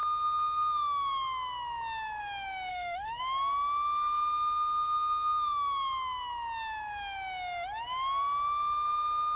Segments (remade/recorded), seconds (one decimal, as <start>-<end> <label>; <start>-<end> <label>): 0.0-2.7 recorded; 2.7-3.2 remade; 3.2-9.4 recorded